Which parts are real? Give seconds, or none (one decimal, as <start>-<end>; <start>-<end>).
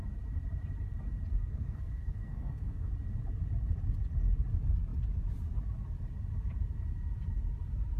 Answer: 0.0-1.3; 2.9-8.0